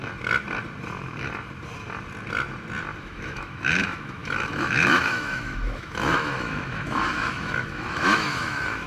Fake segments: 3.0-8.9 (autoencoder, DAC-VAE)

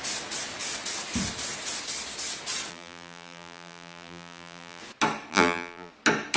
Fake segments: 2.7-4.8 (vocoder, BigVGAN v2); 5.3-5.9

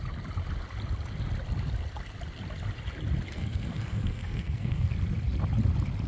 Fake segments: 3.3-4.9 (codec, SNAC)

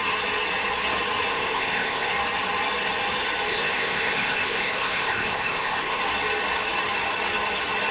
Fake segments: 1.3-2.1 (codec, ZipCodec); 3.5-6.0

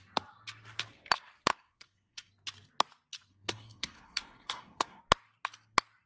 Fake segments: 1.5-2.3 (codec, SNAC); 3.3-5.0